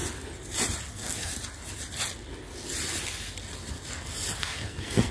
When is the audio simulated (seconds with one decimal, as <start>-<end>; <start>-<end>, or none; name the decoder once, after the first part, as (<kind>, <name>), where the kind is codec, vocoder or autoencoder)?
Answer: 0.9-1.3 (codec, SNAC); 4.4-5.1